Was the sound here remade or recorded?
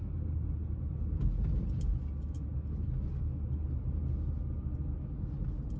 recorded